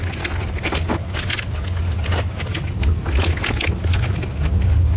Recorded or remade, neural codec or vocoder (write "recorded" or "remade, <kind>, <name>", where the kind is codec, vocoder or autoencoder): recorded